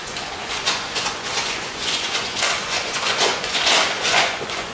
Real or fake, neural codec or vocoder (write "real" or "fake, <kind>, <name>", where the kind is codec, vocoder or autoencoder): fake, vocoder, Vocos